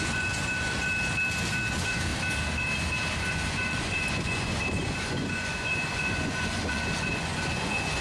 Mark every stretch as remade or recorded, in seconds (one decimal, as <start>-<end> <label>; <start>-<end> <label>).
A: 0.0-0.9 remade; 0.9-1.7 recorded; 1.7-2.1 remade; 2.1-3.2 recorded; 3.2-8.0 remade